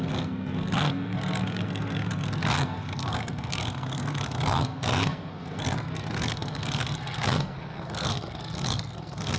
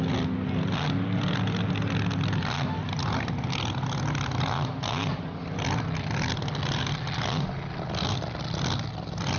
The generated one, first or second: first